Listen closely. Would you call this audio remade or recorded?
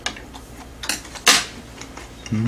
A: recorded